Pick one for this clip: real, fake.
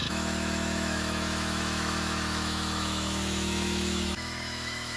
fake